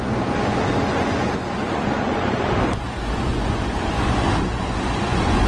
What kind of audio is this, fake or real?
fake